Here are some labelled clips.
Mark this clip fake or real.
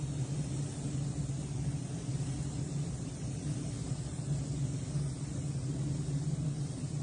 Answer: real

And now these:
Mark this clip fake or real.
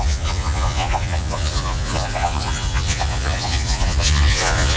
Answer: fake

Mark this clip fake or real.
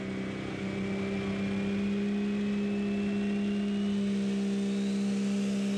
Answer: real